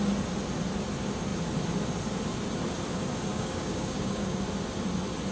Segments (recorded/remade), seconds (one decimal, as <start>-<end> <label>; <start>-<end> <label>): 0.0-3.3 recorded; 3.3-4.4 remade; 4.4-5.3 recorded